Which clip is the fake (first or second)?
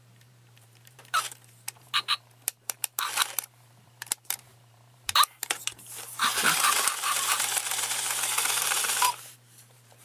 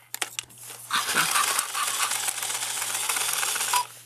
first